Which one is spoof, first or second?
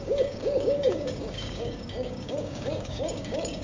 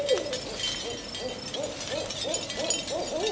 first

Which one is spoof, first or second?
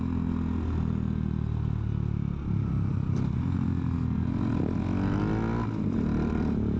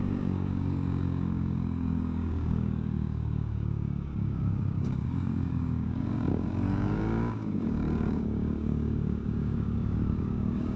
second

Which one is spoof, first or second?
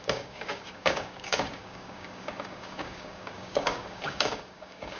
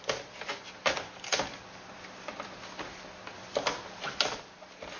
first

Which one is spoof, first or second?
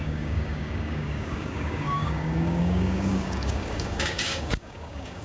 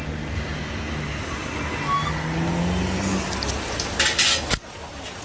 first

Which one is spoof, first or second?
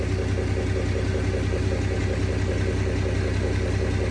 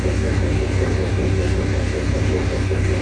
second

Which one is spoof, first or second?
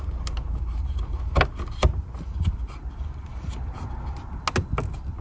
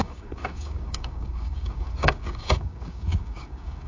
second